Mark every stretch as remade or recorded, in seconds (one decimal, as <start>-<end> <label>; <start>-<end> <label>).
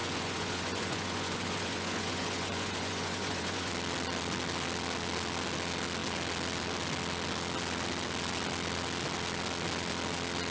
0.0-3.7 remade; 3.7-10.5 recorded